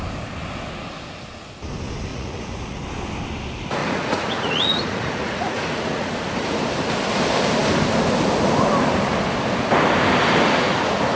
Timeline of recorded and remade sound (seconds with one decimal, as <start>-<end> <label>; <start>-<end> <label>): 0.0-2.1 recorded; 2.1-2.8 remade; 2.8-3.8 recorded; 3.8-6.6 remade; 6.6-11.2 recorded